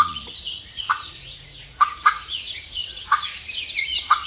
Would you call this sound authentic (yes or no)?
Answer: no